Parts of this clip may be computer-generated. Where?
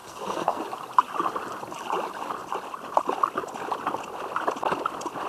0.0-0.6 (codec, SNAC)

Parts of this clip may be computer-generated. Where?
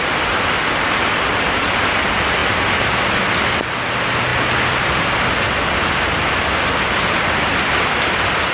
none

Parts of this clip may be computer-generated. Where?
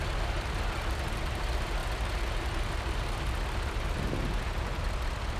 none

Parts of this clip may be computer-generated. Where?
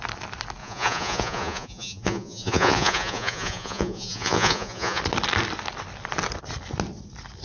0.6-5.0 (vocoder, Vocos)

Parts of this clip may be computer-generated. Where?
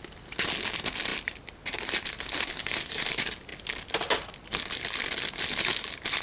none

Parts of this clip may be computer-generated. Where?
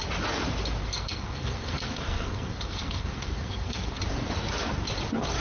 0.8-4.0 (codec, SNAC)